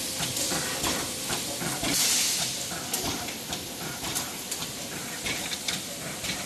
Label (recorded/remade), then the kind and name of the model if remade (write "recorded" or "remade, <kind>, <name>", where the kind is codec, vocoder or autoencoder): remade, vocoder, BigVGAN v2